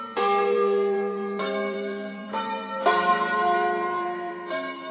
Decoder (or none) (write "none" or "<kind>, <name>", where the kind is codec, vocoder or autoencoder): vocoder, BigVGAN v2